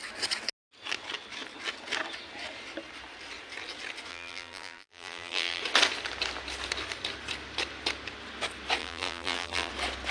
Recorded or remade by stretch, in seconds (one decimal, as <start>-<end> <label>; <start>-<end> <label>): 0.0-4.1 recorded; 4.1-5.6 remade; 5.6-8.8 recorded; 8.8-9.7 remade; 9.7-10.1 recorded